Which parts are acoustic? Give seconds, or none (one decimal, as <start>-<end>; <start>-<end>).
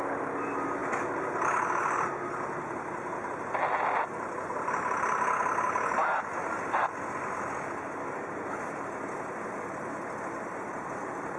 0.0-11.4